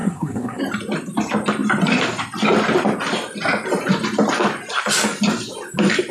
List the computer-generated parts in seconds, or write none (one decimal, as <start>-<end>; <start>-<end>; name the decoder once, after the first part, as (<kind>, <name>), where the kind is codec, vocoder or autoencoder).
0.0-0.6 (codec, SNAC)